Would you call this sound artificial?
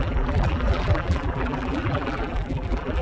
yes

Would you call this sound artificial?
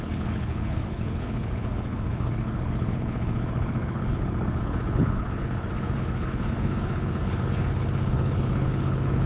yes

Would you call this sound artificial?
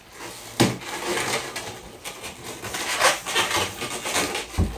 no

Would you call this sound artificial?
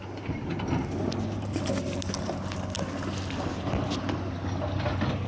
no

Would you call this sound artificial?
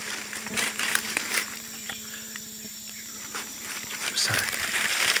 yes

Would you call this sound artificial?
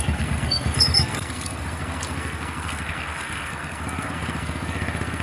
yes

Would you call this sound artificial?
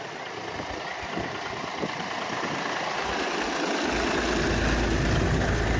no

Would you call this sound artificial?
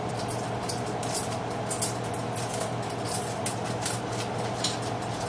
yes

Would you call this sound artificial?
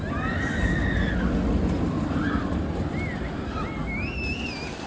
no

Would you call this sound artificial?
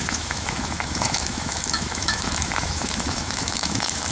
yes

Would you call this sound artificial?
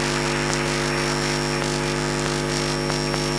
no